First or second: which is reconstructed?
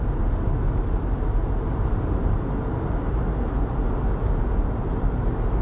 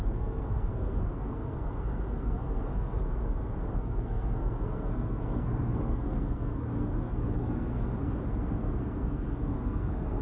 second